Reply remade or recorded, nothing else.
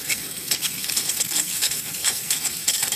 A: remade